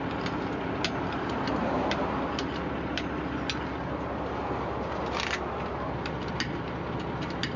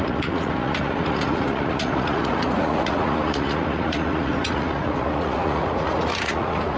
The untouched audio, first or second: first